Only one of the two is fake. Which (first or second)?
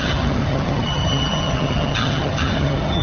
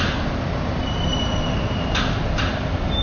first